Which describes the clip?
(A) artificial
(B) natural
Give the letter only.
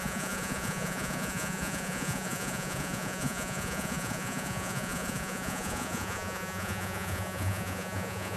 A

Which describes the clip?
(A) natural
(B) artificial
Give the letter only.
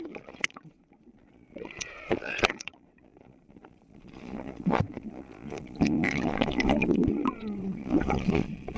B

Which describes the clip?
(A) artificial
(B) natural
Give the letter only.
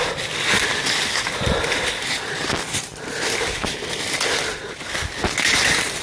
B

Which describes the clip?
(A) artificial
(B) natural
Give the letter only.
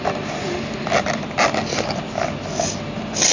B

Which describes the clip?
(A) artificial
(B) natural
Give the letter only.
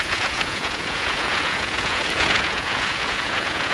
A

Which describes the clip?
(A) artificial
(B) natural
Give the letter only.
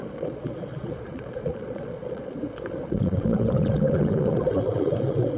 A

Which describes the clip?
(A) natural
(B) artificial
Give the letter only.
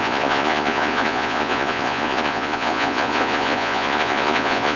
B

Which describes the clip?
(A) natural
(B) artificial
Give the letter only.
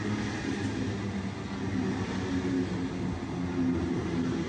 A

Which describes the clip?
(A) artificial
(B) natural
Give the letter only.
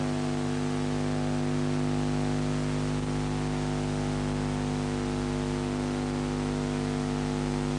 B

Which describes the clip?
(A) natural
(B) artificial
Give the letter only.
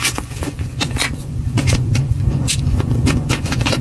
B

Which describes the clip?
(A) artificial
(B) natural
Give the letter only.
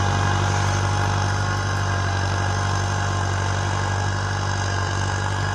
B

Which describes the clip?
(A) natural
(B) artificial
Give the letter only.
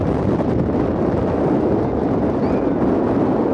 A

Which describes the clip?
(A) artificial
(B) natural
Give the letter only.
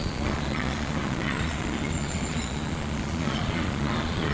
A